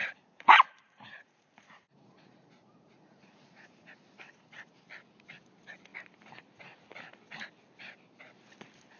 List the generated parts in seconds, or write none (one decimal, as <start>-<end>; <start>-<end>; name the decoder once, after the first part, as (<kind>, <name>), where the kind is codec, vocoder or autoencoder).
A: 0.0-3.9 (vocoder, Vocos)